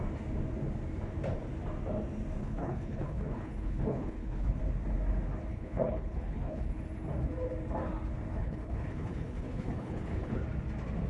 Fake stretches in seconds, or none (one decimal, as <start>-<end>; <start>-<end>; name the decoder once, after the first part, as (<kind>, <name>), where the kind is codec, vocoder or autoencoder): 2.4-4.6 (codec, HILCodec); 5.5-6.8; 8.4-10.4

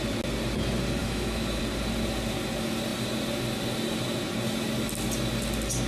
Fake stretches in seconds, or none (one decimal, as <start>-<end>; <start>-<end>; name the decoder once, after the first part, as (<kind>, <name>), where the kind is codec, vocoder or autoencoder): 1.0-1.6 (autoencoder, DAC-VAE)

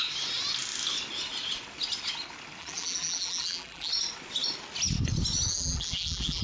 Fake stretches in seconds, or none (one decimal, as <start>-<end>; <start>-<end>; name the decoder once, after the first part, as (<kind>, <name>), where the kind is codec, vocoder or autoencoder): 2.6-3.9 (vocoder, BigVGAN v2); 5.5-6.4

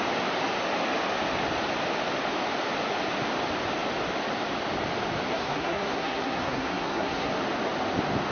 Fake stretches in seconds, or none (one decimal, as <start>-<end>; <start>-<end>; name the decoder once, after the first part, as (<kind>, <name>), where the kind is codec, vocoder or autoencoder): 5.3-7.3 (codec, SNAC)

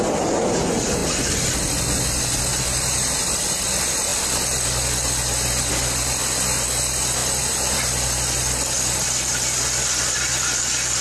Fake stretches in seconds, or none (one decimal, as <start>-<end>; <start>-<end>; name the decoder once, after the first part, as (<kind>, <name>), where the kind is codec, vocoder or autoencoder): 7.2-8.3 (vocoder, BigVGAN v2)